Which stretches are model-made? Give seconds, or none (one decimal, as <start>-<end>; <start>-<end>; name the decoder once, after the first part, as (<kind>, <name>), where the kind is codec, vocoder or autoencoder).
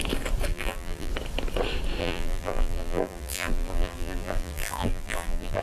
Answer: 0.5-1.1 (vocoder, BigVGAN v2); 2.0-5.6